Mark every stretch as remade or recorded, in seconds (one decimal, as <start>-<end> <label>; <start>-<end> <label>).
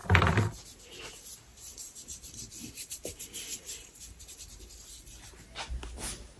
0.0-1.5 recorded; 1.5-5.3 remade; 5.3-6.4 recorded